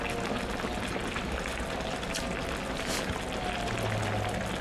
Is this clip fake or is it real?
real